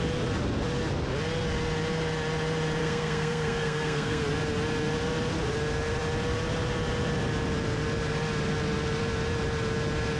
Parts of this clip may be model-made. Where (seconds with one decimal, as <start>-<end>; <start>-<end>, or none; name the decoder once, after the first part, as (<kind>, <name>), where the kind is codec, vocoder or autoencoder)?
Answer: 2.8-4.2 (codec, SNAC)